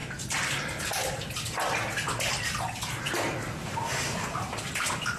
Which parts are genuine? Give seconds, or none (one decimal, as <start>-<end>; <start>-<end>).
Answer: 0.0-5.2